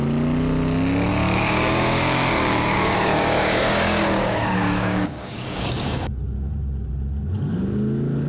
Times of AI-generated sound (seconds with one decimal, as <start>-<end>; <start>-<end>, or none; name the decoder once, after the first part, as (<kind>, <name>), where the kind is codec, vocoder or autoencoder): 1.1-6.1 (codec, DAC)